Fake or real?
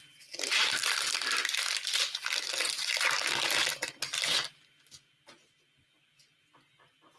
real